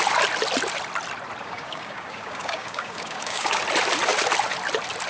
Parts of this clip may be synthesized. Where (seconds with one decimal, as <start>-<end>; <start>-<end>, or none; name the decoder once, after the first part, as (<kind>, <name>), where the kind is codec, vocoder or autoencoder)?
1.4-3.6 (codec, DAC)